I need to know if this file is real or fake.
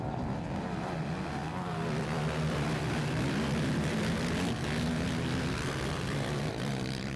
real